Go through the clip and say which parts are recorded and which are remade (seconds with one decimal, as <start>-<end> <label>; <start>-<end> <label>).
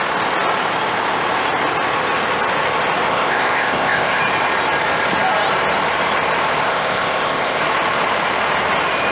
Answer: 0.0-3.1 recorded; 3.1-4.2 remade; 4.2-6.7 recorded; 6.7-7.6 remade; 7.6-9.1 recorded